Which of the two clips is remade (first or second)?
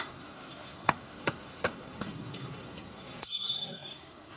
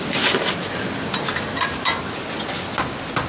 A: first